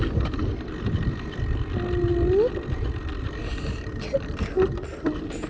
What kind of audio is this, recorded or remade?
recorded